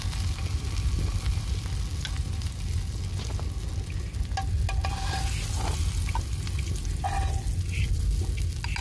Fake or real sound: real